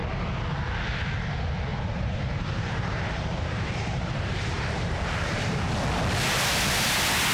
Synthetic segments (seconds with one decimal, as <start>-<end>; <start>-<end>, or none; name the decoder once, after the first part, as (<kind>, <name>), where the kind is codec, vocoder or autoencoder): 1.7-5.7 (vocoder, BigVGAN v2)